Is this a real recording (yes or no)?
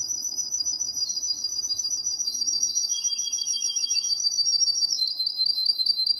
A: no